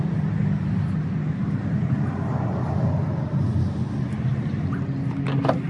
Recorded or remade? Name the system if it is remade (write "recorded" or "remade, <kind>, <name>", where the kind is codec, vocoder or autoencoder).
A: recorded